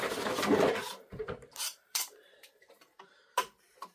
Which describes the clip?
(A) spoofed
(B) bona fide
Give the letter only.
A